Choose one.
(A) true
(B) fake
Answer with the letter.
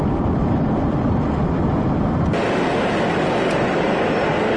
A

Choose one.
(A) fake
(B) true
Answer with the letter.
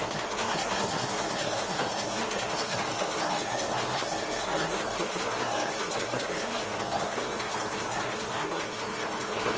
A